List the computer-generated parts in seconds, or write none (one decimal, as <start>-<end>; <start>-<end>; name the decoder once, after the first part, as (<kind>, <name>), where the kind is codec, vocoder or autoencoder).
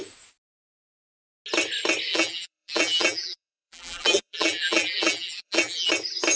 2.1-5.9 (vocoder, BigVGAN v2)